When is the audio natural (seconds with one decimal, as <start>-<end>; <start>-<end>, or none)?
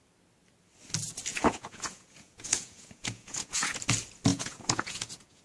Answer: 0.0-1.3; 3.8-4.3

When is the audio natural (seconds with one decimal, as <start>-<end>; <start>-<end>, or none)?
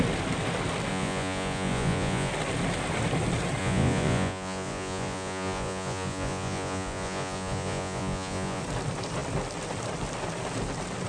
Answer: 0.0-0.9; 2.3-3.6; 8.6-11.1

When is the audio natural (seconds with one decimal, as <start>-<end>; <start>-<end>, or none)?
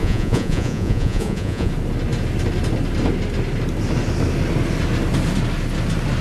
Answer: 1.7-6.2